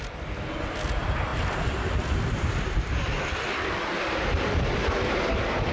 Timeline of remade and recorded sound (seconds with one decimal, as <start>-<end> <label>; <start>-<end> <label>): 0.0-5.7 recorded